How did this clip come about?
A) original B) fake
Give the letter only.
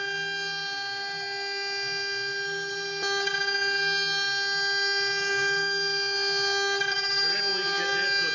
A